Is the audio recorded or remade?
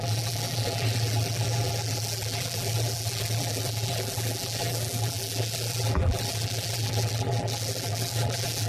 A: remade